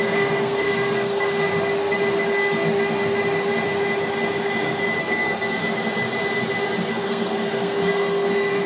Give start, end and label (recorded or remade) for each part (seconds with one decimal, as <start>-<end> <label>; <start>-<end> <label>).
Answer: 0.0-1.5 remade; 1.5-5.0 recorded; 5.0-5.6 remade; 5.6-6.9 recorded; 6.9-8.7 remade